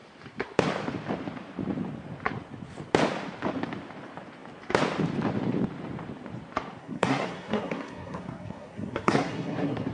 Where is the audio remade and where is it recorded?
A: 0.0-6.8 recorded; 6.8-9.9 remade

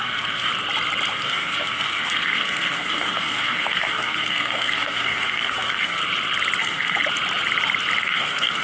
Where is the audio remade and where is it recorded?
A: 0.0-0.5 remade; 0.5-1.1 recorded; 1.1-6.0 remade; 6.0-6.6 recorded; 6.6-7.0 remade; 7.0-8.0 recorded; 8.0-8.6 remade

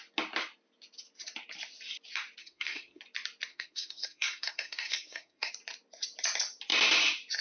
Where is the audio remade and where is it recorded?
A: 0.0-2.4 recorded; 2.4-3.0 remade; 3.0-3.5 recorded; 3.5-5.5 remade; 5.5-7.4 recorded

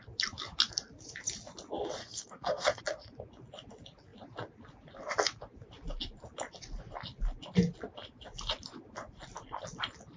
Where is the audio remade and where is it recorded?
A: 0.0-2.0 recorded; 2.0-2.8 remade; 2.8-10.2 recorded